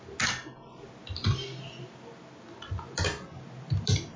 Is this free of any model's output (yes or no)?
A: yes